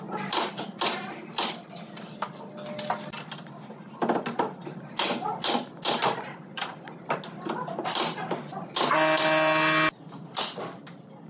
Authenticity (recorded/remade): recorded